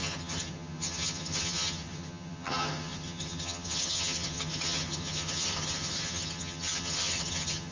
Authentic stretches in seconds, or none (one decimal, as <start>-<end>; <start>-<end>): none